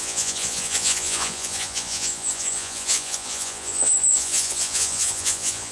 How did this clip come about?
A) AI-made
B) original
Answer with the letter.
A